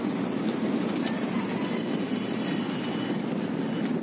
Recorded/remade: recorded